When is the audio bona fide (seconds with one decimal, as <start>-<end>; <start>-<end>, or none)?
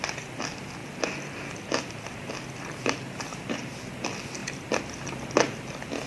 0.0-3.3; 3.8-6.1